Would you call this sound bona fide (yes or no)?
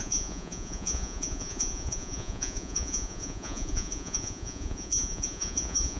no